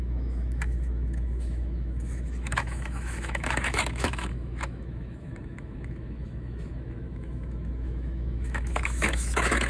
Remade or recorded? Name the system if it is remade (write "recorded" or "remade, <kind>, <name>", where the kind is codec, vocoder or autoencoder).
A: remade, autoencoder, DAC-VAE